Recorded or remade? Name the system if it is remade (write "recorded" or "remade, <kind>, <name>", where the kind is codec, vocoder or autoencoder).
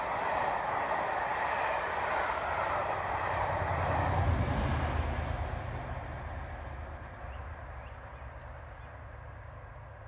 recorded